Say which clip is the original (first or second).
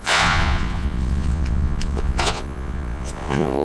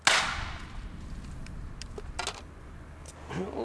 second